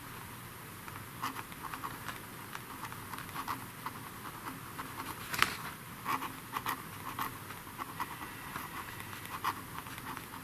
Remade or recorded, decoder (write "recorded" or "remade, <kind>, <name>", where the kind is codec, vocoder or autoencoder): recorded